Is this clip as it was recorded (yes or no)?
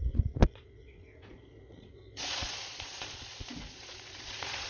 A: no